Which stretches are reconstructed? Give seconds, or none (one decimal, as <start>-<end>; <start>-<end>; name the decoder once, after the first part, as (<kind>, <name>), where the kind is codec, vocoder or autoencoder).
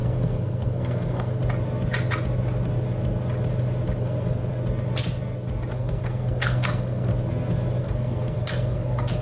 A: 0.0-1.4 (codec, SNAC); 4.0-4.5; 5.7-7.1; 7.8-9.2